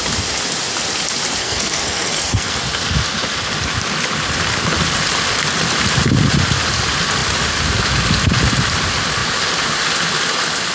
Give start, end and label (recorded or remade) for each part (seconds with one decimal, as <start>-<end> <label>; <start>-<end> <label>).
0.0-1.4 recorded; 1.4-2.6 remade; 2.6-10.7 recorded